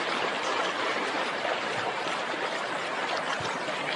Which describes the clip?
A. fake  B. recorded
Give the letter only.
A